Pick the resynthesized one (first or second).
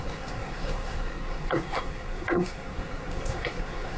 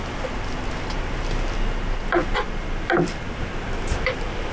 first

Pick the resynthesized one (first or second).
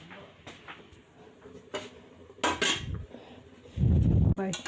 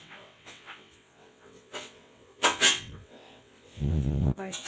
second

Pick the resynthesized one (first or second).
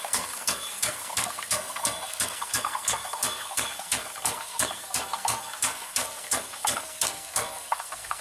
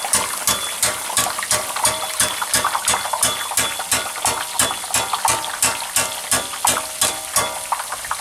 first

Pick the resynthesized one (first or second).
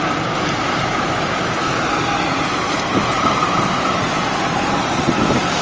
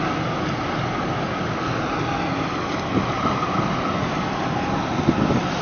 first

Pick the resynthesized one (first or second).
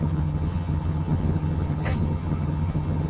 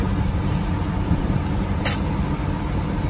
first